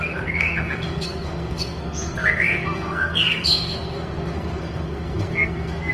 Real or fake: fake